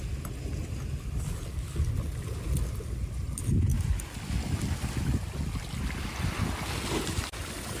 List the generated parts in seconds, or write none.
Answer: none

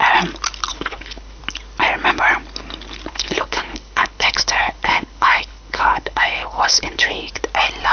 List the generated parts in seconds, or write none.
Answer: 0.7-1.4 (codec, HILCodec); 3.1-7.3

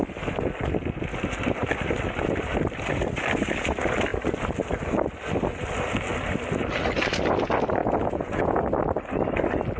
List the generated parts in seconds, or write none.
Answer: 7.8-8.6 (vocoder, Vocos)